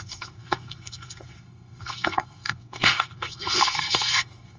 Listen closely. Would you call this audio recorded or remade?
remade